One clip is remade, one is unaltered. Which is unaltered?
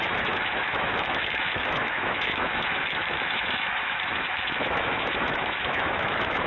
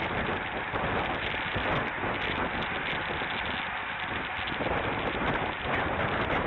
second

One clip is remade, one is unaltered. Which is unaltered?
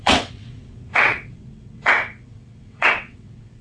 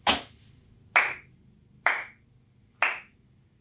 second